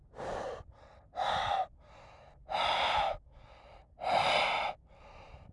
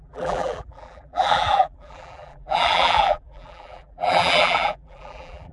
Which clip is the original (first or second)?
first